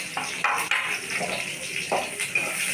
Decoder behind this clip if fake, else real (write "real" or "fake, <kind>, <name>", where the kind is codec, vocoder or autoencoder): real